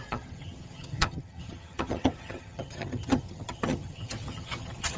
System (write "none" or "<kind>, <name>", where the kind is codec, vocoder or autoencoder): vocoder, HiFi-GAN